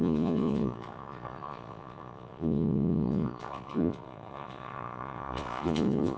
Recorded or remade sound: remade